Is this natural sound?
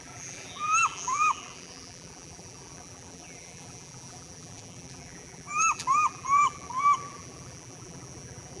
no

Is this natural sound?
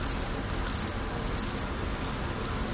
yes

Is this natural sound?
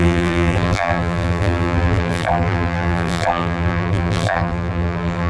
no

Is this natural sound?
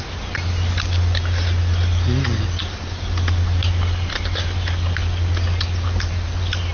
yes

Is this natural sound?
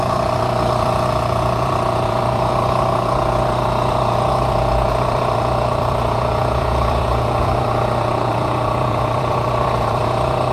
no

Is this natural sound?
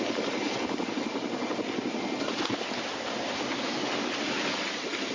yes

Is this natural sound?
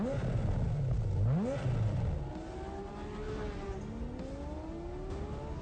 yes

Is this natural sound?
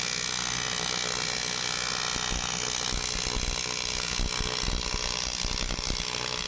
yes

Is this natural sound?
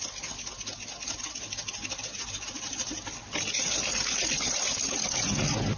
yes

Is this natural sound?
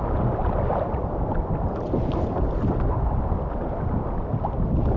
yes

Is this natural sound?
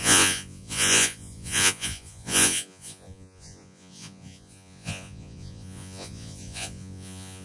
no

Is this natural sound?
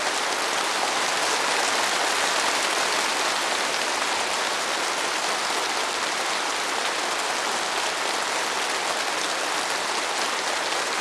yes